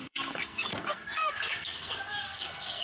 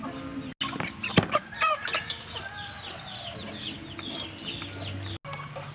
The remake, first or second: first